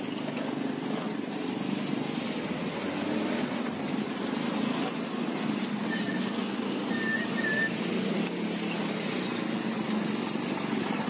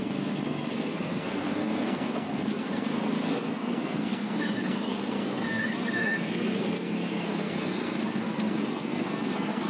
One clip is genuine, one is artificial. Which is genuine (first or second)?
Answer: first